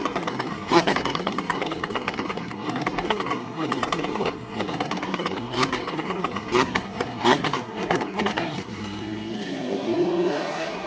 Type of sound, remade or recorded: remade